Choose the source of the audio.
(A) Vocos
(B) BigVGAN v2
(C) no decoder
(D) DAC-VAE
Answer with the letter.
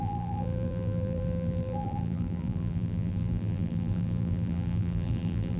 B